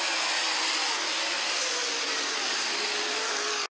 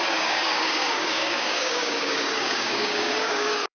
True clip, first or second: first